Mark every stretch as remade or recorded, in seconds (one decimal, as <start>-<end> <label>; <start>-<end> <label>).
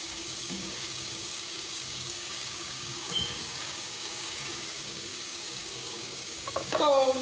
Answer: 0.0-7.2 remade